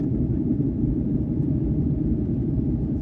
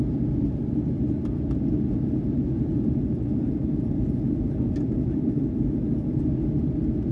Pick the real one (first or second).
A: second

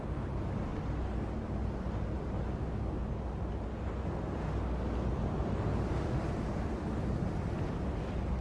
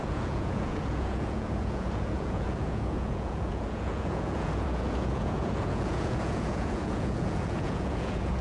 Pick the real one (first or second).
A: first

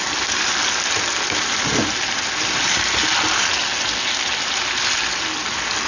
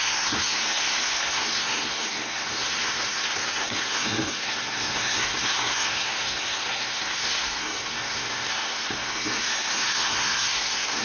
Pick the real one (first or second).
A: first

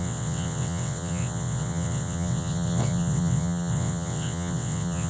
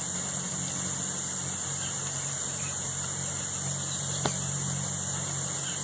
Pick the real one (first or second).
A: second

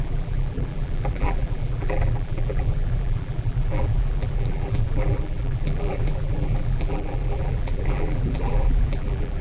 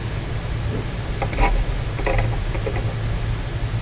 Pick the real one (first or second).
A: second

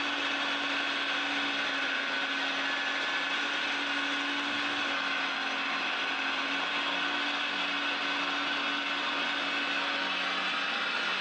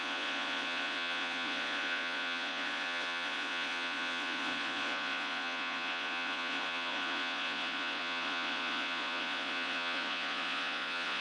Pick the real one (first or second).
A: first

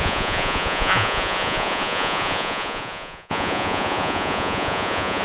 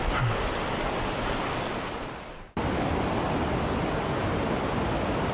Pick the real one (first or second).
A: second